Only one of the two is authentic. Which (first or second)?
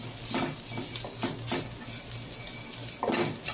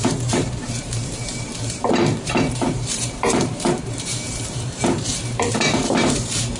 first